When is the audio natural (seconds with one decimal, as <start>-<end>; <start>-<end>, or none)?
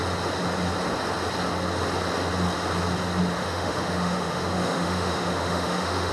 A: 0.0-3.4